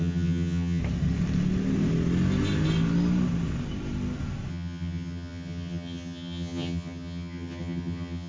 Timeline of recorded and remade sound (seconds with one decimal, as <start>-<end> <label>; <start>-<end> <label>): 0.0-0.8 remade; 0.8-4.5 recorded; 4.5-8.3 remade